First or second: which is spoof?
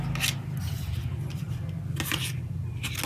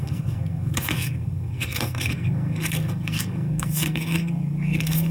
second